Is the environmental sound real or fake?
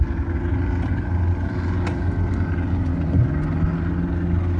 real